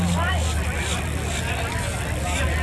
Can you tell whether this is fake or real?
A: real